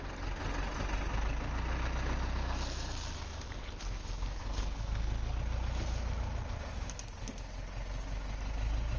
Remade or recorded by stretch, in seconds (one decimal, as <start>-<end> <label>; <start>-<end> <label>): 0.0-4.4 recorded; 4.4-5.4 remade; 5.4-9.0 recorded